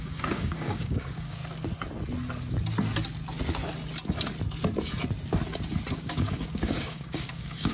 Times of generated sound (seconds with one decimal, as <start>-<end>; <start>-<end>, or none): 0.0-1.4; 5.9-7.7